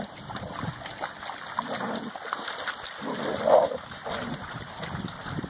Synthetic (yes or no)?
no